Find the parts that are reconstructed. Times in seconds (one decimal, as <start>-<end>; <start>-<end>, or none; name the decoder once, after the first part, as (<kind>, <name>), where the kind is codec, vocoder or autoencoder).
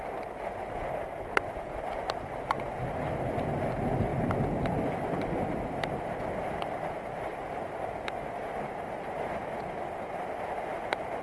none